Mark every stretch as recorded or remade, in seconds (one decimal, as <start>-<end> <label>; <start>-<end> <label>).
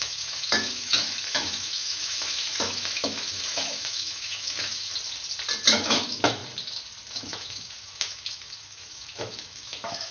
0.0-4.9 remade; 4.9-5.7 recorded; 5.7-6.4 remade; 6.4-7.1 recorded; 7.1-10.1 remade